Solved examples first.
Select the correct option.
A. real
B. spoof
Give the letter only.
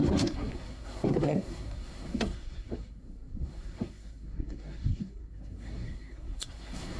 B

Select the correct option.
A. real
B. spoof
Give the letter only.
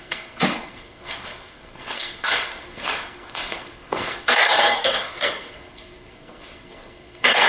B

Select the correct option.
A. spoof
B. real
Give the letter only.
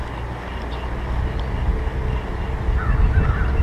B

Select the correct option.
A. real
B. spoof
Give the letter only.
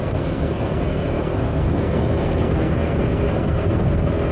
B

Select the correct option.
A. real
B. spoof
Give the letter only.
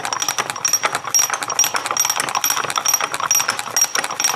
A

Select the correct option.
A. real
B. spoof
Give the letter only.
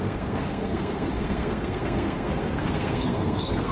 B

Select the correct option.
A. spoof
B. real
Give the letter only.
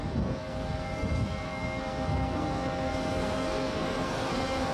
A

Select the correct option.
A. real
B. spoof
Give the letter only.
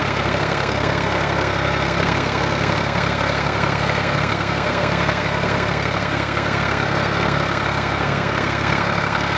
B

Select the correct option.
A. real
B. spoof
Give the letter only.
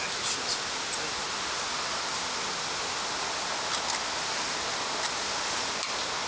A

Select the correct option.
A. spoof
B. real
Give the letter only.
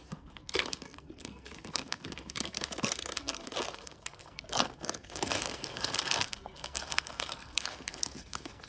A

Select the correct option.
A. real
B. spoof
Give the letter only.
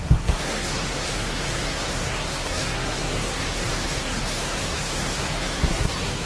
B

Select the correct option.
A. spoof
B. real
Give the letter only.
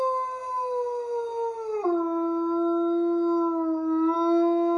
B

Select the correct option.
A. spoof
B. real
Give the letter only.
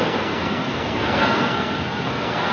A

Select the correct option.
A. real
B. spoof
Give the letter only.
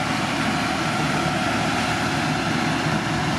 A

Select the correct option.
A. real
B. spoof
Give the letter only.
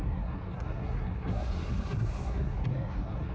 B